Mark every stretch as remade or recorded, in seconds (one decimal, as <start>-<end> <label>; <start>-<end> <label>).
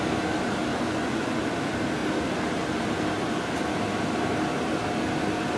0.0-0.7 recorded; 0.7-1.4 remade; 1.4-5.6 recorded